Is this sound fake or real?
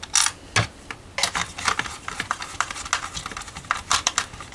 real